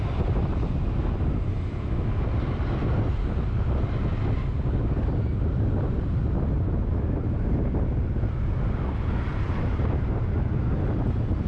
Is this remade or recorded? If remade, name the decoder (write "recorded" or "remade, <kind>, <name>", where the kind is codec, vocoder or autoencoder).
recorded